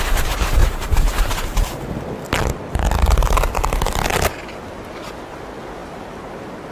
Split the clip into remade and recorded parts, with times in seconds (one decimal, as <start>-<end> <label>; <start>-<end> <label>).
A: 0.0-0.6 recorded; 0.6-1.7 remade; 1.7-6.7 recorded